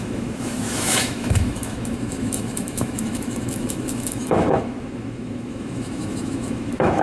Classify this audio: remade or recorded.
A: remade